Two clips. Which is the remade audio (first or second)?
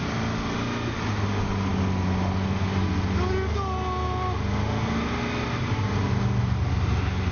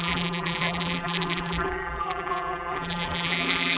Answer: second